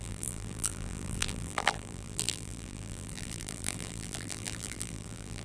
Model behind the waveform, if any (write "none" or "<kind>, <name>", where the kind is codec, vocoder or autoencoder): vocoder, BigVGAN v2